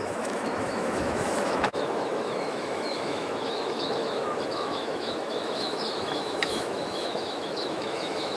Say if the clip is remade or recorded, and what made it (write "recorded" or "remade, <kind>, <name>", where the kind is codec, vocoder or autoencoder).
remade, autoencoder, DAC-VAE